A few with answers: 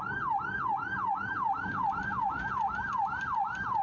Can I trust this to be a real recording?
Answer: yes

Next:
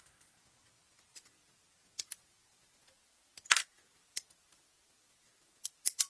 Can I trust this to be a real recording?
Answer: yes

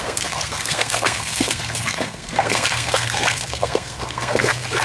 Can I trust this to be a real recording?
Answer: no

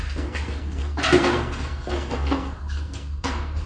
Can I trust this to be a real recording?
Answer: no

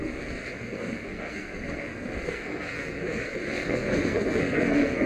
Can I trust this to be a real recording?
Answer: no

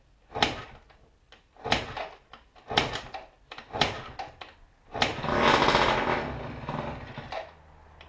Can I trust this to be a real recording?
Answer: yes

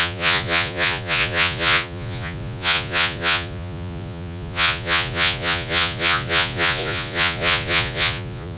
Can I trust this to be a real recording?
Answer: no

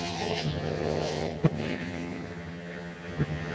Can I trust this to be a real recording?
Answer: no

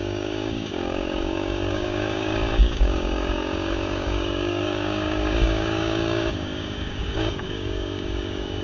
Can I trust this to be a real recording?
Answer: no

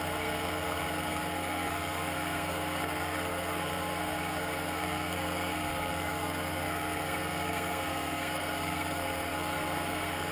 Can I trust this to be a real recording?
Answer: no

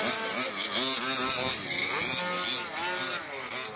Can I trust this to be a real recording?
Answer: yes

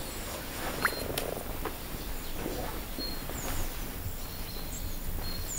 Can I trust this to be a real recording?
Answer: yes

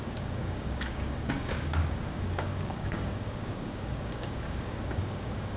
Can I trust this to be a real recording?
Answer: no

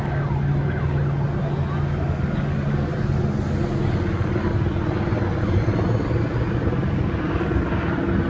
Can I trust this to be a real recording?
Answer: yes